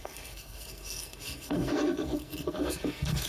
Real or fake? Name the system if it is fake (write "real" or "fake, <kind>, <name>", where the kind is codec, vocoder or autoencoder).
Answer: fake, codec, SNAC